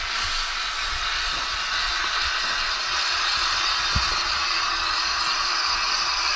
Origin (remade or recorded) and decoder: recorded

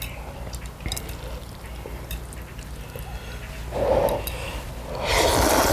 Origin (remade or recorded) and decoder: recorded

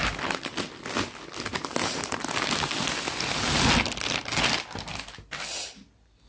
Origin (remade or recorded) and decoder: recorded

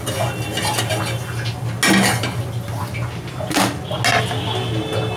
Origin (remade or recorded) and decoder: recorded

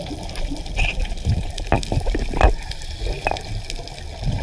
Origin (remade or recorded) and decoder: recorded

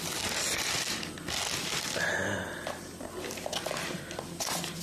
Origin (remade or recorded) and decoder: recorded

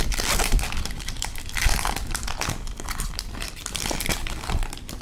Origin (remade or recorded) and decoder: remade, vocoder, BigVGAN v2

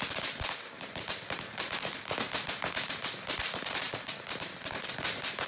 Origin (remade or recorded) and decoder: remade, vocoder, BigVGAN v2